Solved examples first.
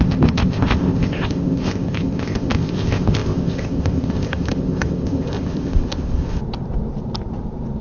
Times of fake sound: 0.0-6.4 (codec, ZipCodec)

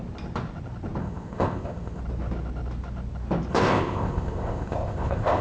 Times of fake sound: 1.0-2.0 (codec, ZipCodec); 3.5-5.4

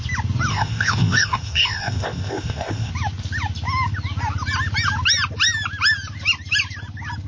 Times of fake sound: 0.5-2.9 (codec, ZipCodec)

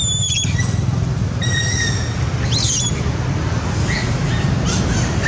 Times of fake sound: none